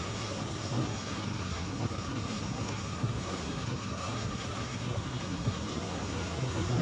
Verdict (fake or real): fake